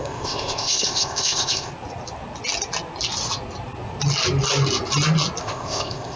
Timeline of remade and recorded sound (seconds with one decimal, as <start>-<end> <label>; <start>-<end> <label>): 0.0-1.7 remade; 1.7-5.4 recorded; 5.4-6.2 remade